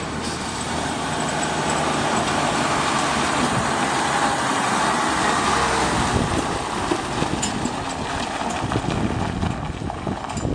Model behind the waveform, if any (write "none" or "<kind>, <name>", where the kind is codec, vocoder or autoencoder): none